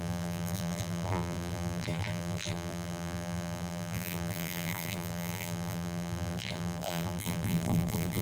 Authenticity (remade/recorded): remade